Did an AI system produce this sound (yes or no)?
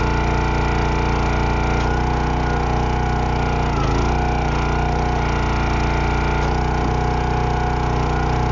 no